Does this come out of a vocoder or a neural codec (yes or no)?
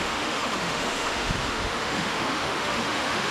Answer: yes